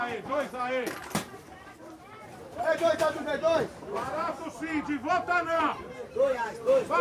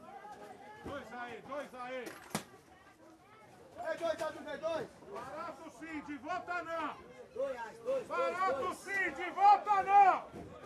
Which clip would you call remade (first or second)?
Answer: first